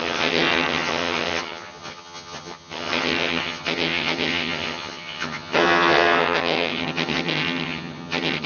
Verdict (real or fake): fake